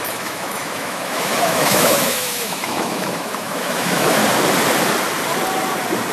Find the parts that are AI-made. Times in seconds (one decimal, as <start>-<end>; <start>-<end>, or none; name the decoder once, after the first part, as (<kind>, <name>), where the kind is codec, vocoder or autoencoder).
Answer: 0.0-4.2 (autoencoder, DAC-VAE)